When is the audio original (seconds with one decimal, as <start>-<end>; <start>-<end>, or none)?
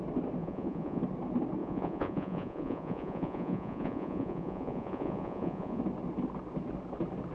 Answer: 0.0-0.4; 1.0-1.6; 5.8-7.3